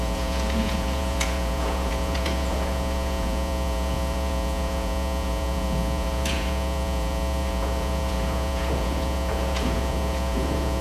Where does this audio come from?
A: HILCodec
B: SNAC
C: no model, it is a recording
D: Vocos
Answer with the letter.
D